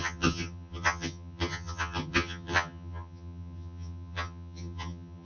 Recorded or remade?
remade